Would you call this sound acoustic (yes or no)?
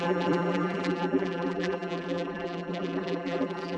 no